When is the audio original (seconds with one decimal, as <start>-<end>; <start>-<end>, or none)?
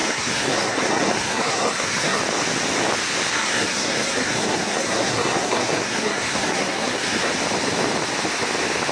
2.2-3.3; 7.3-8.9